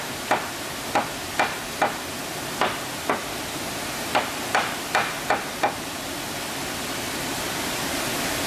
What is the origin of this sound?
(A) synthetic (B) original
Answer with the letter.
B